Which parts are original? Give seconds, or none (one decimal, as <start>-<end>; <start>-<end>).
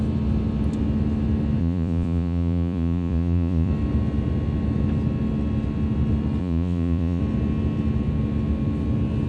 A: 0.0-1.6; 3.7-6.4; 7.2-9.3